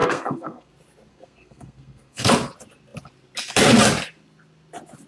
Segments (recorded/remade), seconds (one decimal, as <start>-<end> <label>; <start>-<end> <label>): 0.0-0.7 remade; 0.7-1.1 recorded; 1.1-2.3 remade; 2.3-5.1 recorded